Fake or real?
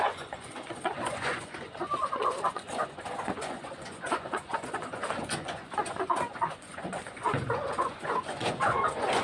fake